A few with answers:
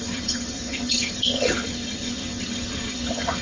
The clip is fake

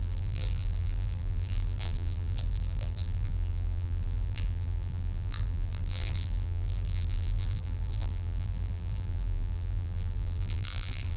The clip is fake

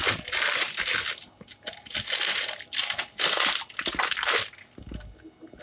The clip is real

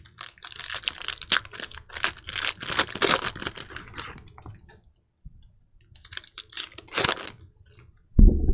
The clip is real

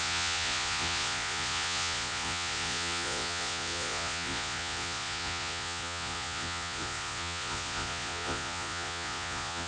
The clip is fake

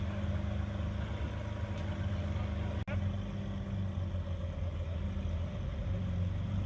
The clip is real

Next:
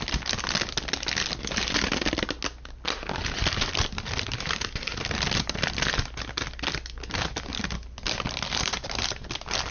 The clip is real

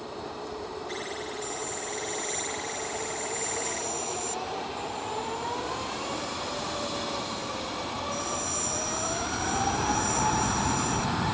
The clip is fake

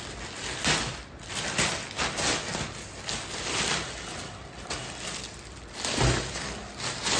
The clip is real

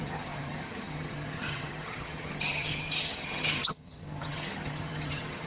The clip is fake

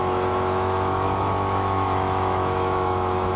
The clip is fake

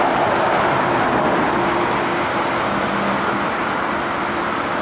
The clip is real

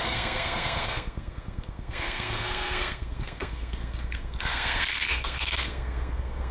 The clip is fake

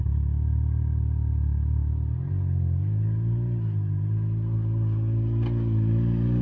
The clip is real